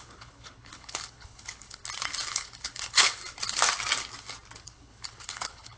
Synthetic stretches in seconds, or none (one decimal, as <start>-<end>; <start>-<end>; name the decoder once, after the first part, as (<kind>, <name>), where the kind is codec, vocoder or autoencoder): 0.0-1.8 (codec, HILCodec); 2.3-3.2; 4.6-5.8